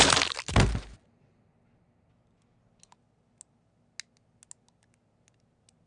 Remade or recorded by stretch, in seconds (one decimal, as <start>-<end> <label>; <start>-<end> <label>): 0.0-5.9 recorded